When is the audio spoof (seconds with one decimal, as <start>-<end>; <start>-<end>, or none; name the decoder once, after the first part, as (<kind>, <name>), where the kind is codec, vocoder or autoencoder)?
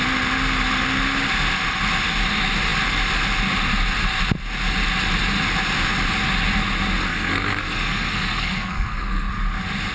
7.1-9.3 (codec, SNAC)